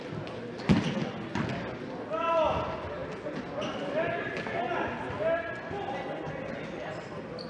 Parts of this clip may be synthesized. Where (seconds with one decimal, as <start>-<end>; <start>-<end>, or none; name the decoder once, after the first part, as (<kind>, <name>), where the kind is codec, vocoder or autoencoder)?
none